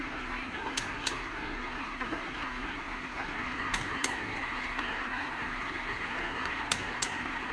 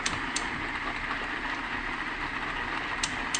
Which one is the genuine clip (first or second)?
second